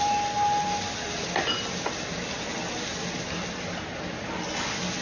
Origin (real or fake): real